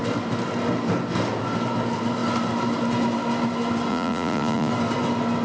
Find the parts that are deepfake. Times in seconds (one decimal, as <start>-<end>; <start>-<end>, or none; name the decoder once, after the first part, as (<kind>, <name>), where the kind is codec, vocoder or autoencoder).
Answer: 3.9-4.7 (vocoder, Vocos)